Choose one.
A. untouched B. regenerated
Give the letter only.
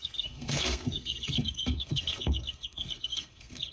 B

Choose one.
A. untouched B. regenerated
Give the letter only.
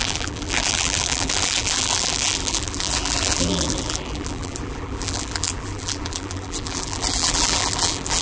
B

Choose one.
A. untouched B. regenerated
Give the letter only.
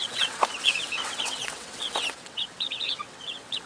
B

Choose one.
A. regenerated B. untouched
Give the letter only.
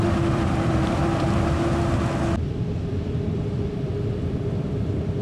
A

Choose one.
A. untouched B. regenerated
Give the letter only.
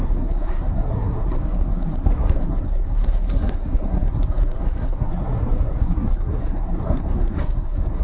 B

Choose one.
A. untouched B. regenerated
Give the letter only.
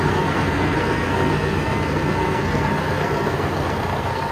B